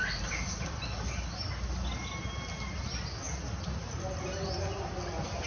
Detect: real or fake real